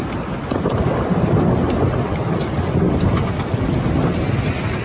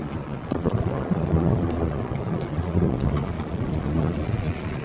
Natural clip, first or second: first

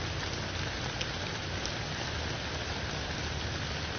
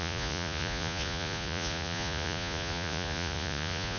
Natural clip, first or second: first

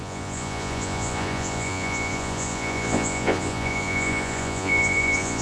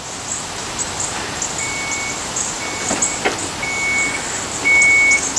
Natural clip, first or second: second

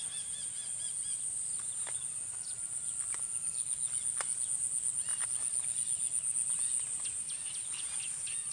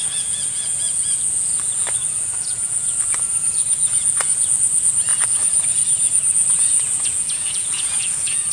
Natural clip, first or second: first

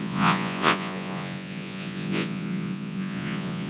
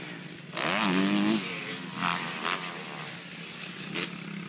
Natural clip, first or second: second